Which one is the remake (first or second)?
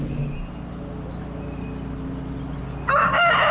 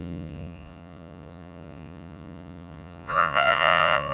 second